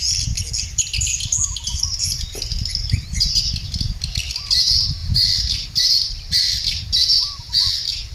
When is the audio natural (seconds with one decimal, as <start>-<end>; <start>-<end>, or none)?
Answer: 0.0-8.1